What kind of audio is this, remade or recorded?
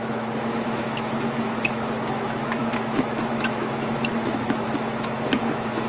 remade